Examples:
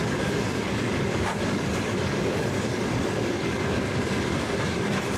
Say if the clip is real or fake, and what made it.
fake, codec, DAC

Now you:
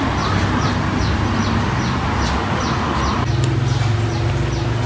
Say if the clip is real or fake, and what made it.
real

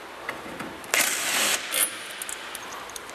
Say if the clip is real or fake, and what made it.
real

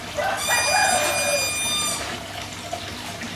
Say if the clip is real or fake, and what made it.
real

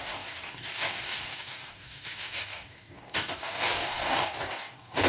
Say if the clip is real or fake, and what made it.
fake, codec, DAC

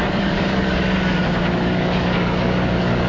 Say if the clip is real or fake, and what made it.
fake, codec, DAC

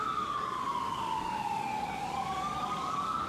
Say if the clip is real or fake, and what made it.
fake, codec, DAC